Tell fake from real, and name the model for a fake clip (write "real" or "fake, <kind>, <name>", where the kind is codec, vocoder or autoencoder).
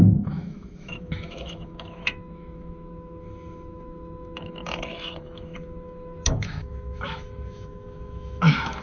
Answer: fake, autoencoder, DAC-VAE